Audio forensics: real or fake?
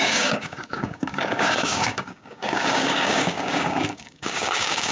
fake